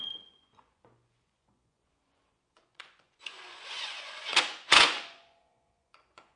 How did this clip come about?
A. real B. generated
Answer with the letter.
B